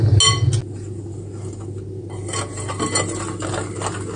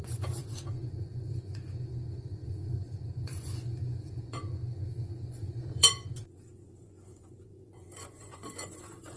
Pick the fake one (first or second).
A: second